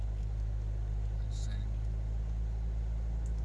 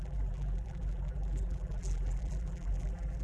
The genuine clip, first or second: first